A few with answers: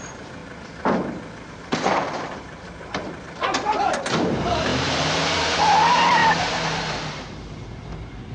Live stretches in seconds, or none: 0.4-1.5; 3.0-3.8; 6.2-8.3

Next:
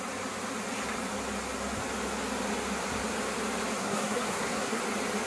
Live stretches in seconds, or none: 0.0-3.8; 4.8-5.3